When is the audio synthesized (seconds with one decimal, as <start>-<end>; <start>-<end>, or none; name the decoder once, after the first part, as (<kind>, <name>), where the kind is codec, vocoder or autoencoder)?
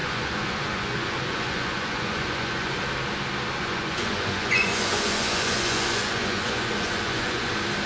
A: 0.0-2.8 (vocoder, Vocos); 3.6-7.5